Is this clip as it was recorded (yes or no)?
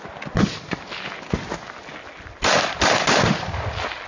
yes